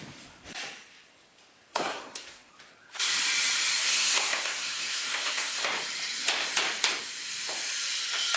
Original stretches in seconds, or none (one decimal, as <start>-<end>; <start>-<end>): 0.0-1.7; 2.5-3.8; 5.6-8.4